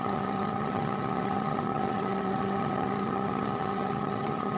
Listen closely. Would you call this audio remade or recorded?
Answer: remade